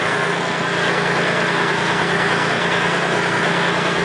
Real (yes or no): no